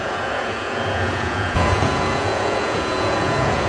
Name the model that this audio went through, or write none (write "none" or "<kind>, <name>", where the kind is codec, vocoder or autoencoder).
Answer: vocoder, Vocos